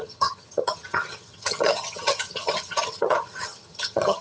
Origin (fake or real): fake